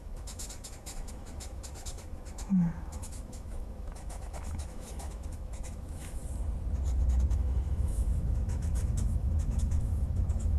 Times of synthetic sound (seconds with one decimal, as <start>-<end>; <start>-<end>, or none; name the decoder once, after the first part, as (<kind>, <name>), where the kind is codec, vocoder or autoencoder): 0.0-6.2 (autoencoder, DAC-VAE); 7.3-10.6